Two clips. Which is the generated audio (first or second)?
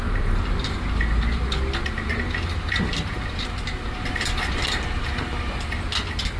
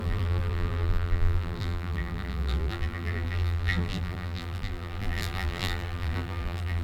second